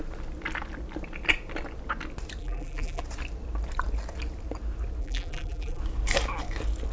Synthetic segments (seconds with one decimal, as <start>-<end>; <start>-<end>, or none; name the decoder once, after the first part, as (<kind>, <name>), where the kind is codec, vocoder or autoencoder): 2.4-3.0 (vocoder, BigVGAN v2); 5.0-5.8

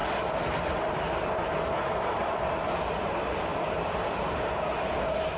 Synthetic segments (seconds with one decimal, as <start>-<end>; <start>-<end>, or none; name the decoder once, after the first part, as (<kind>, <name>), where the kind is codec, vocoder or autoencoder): 0.0-1.5 (vocoder, BigVGAN v2); 3.5-4.3

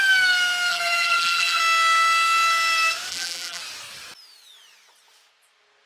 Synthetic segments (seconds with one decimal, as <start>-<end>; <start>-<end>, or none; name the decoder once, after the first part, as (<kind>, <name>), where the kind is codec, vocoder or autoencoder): 0.7-1.6 (vocoder, BigVGAN v2); 3.1-3.6

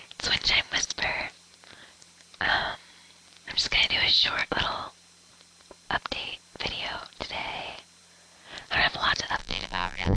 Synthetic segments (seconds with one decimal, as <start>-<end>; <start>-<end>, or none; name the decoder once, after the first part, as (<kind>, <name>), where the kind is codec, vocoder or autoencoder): 9.4-10.2 (vocoder, BigVGAN v2)

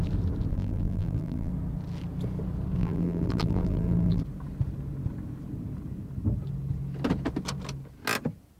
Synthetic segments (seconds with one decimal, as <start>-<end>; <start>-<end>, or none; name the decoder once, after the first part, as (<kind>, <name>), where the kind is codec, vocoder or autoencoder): 0.5-1.5 (vocoder, BigVGAN v2); 2.8-4.2

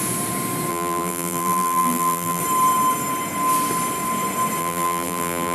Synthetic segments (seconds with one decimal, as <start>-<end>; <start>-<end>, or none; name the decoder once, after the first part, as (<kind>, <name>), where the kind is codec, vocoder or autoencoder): 0.7-2.4 (vocoder, BigVGAN v2); 4.6-5.5

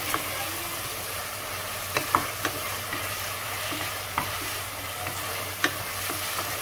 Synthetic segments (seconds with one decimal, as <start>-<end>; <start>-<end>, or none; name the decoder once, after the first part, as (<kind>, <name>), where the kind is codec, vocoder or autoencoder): 0.7-4.7 (vocoder, BigVGAN v2)